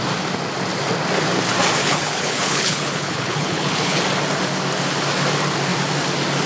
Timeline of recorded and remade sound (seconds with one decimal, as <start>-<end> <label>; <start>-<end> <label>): 0.0-1.8 recorded; 1.8-4.0 remade; 4.0-6.5 recorded